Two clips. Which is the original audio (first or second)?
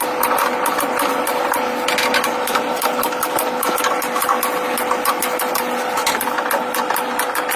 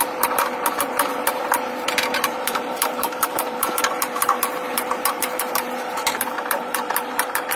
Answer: first